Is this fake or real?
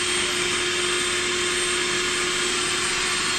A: real